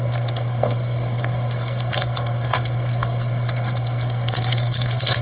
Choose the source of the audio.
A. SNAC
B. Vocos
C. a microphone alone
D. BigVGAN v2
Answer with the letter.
A